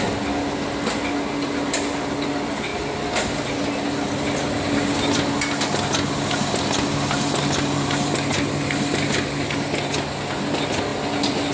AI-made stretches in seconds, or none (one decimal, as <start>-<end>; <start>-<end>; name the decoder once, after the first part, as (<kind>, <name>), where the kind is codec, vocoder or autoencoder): none